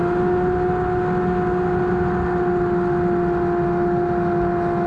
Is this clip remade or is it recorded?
recorded